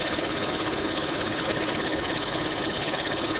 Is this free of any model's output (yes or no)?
no